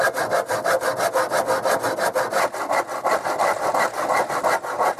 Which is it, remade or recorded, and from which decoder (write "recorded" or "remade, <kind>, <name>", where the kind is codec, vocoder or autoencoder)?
recorded